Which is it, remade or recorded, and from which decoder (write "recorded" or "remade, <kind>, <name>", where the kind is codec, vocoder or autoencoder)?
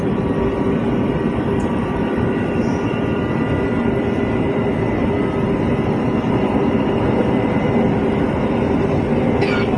recorded